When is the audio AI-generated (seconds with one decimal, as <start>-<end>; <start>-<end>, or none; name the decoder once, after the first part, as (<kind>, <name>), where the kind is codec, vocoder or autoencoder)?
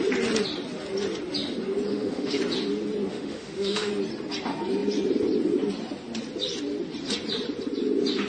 1.9-2.4 (autoencoder, DAC-VAE); 3.1-3.9